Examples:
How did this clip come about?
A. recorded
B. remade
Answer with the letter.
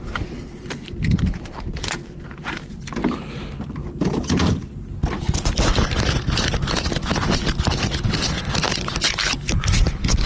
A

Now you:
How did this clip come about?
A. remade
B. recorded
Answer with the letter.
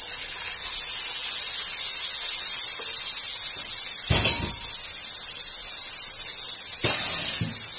B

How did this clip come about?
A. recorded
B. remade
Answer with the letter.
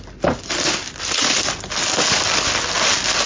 A